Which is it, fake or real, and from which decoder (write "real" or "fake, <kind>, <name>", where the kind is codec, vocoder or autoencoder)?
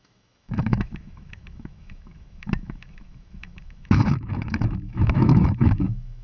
fake, autoencoder, DAC-VAE